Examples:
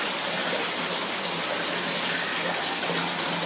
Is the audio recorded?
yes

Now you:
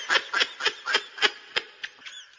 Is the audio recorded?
yes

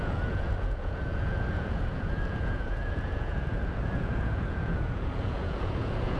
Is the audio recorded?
no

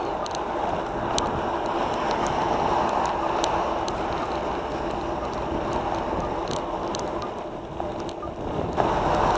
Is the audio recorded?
yes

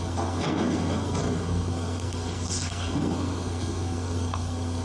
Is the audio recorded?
no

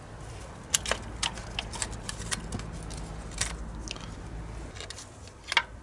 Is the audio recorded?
yes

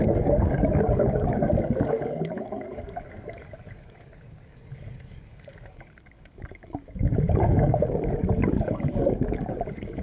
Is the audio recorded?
no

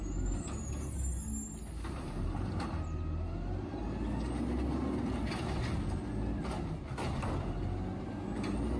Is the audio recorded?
yes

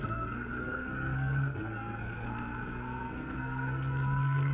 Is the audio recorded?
no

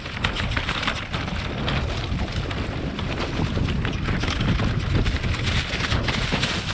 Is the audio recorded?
yes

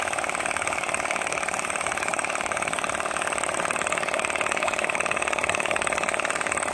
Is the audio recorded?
no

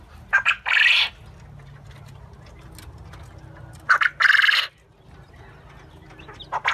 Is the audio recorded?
yes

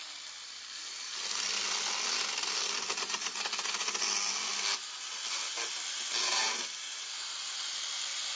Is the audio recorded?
yes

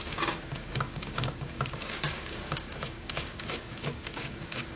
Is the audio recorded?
no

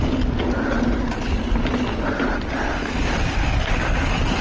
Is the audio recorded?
yes